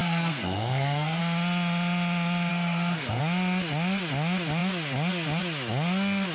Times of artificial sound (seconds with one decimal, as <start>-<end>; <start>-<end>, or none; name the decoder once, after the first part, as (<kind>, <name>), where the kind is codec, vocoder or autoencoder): 0.0-1.2 (codec, SNAC); 2.5-3.2